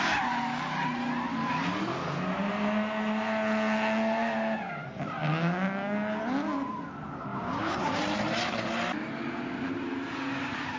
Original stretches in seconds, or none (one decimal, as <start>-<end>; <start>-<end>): 0.0-5.2; 6.2-7.3; 8.0-10.8